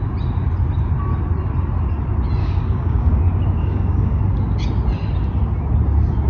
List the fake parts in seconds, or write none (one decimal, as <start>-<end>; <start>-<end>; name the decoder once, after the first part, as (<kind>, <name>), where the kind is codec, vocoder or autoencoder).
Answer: 2.4-3.2 (codec, DAC); 3.6-4.2